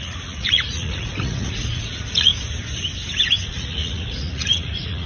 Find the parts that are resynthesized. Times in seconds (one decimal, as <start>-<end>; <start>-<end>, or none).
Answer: 0.0-2.3; 3.4-5.1